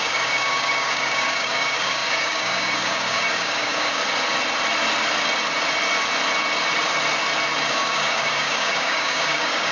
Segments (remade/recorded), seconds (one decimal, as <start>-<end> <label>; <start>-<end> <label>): 0.0-4.0 remade; 4.0-7.7 recorded; 7.7-9.7 remade